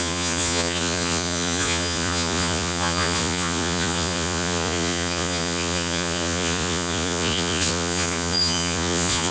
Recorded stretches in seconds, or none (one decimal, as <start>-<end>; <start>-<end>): none